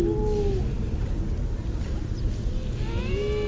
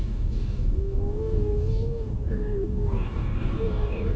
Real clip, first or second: first